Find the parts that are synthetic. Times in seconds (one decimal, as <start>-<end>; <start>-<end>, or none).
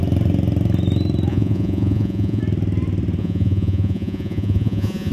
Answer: 1.3-2.4; 3.2-5.1